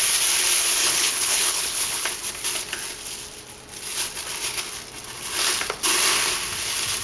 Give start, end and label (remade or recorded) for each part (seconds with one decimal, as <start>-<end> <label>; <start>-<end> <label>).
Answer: 0.0-0.8 recorded; 0.8-2.1 remade; 2.1-7.0 recorded

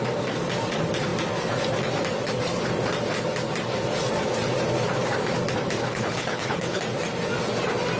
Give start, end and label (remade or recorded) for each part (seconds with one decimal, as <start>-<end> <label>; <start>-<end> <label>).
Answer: 0.0-5.8 recorded; 5.8-6.8 remade; 6.8-8.0 recorded

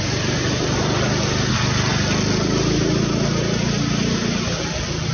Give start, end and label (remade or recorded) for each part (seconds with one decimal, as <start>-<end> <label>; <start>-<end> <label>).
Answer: 0.0-5.1 recorded